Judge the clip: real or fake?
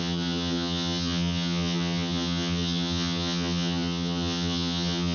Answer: fake